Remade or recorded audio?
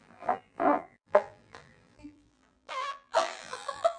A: remade